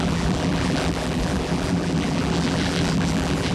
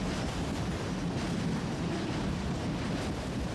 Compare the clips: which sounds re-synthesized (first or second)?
first